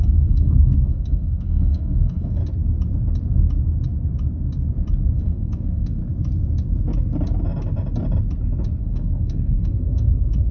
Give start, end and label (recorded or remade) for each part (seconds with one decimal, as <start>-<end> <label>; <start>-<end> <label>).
0.0-2.4 remade; 2.4-5.2 recorded; 5.2-6.0 remade; 6.0-8.8 recorded; 8.8-10.5 remade

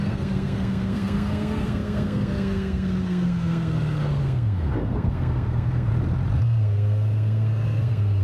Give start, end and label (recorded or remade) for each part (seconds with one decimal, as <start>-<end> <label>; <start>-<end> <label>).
0.0-5.9 remade; 5.9-6.4 recorded; 6.4-8.2 remade

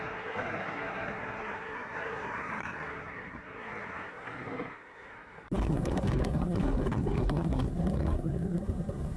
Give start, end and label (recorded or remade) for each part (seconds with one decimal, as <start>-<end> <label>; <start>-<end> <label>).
0.0-9.2 remade